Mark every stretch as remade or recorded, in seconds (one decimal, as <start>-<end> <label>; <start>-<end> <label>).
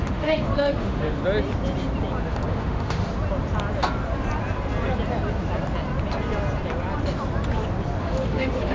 0.0-1.2 remade; 1.2-2.3 recorded; 2.3-3.1 remade; 3.1-8.0 recorded; 8.0-8.7 remade